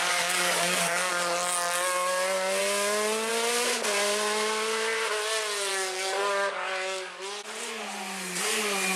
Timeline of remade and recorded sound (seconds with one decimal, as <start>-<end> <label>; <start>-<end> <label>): 0.0-1.1 remade; 1.1-5.7 recorded; 5.7-7.2 remade; 7.2-9.0 recorded